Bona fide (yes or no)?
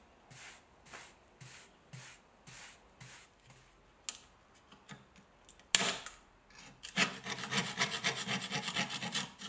yes